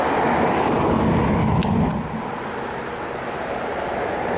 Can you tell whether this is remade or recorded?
recorded